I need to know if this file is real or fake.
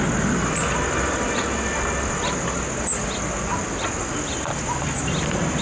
real